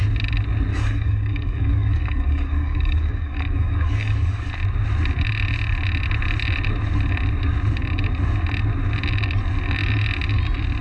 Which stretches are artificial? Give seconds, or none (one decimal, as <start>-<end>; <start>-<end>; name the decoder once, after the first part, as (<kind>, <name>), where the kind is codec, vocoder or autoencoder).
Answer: 0.7-4.5 (codec, DAC)